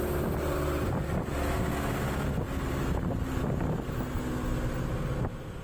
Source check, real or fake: real